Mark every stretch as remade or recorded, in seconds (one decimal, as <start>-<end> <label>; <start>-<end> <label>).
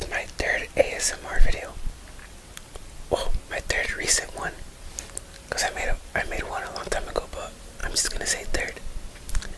0.0-9.6 recorded